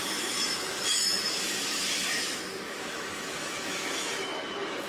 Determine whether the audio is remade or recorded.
remade